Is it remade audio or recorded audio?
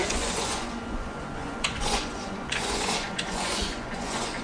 remade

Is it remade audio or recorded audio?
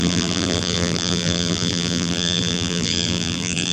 remade